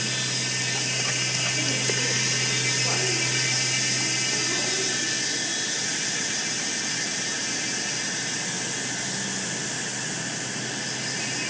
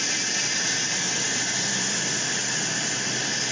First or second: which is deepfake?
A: second